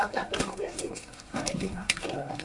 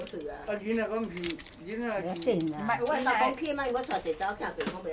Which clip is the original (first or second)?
second